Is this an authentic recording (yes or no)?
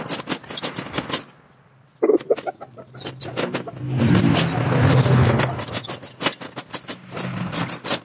yes